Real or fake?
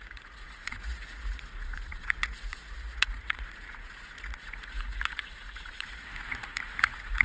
fake